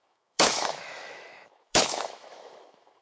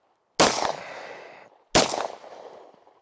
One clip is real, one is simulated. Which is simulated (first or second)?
first